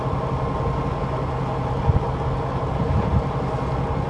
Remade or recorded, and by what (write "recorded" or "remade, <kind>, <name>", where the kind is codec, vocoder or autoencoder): recorded